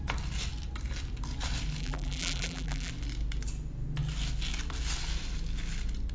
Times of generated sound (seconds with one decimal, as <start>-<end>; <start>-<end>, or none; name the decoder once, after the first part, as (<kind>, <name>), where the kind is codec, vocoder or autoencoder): 1.8-2.9 (vocoder, BigVGAN v2)